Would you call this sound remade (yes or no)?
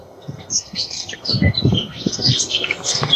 yes